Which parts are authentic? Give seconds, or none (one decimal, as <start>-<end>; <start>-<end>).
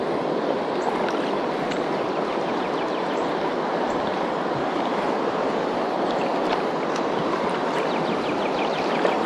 0.0-9.3